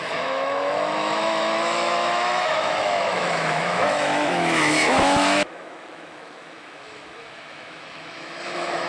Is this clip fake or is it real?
fake